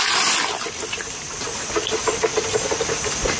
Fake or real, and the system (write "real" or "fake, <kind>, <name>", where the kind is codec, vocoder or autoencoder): real